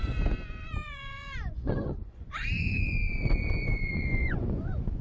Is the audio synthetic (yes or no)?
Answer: yes